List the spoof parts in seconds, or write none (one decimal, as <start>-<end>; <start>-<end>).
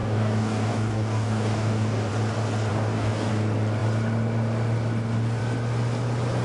0.0-2.1; 2.7-3.3